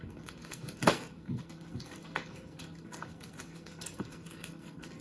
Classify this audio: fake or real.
fake